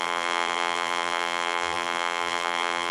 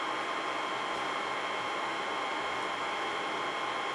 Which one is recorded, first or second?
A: second